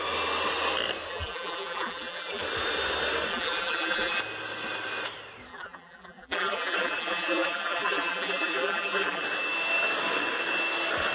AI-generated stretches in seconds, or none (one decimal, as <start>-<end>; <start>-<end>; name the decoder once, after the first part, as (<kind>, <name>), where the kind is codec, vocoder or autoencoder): 1.1-2.4 (vocoder, BigVGAN v2); 3.3-4.2; 5.5-9.2